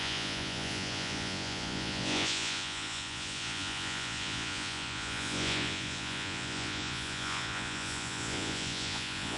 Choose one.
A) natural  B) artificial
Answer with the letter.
B